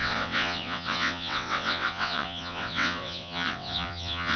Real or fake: fake